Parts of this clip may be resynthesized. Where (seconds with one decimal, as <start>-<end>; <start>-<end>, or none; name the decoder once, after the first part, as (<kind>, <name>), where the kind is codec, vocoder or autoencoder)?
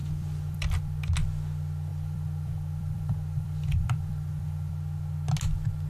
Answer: 0.0-1.0 (vocoder, BigVGAN v2); 1.9-4.7